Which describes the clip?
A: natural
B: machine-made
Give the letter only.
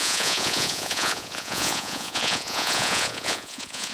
B